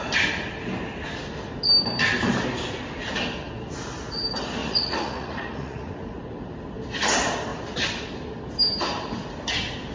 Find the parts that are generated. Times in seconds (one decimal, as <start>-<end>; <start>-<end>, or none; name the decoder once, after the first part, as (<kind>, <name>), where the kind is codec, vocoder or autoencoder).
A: 4.6-5.9 (vocoder, Vocos)

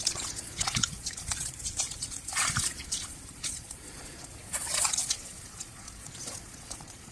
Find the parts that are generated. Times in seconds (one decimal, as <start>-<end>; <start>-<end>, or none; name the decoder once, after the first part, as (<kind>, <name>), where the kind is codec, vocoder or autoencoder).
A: 0.0-7.1 (vocoder, Vocos)

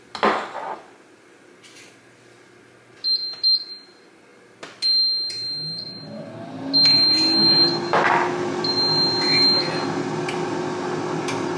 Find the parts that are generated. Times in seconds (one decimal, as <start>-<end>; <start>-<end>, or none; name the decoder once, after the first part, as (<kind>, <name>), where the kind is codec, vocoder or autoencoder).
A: none

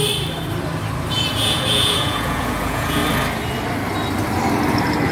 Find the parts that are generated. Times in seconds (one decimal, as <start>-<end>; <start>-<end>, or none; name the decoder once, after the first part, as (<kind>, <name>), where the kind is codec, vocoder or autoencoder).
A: 1.1-3.0 (vocoder, Vocos)